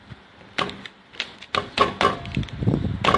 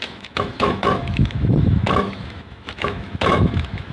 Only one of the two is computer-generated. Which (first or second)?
second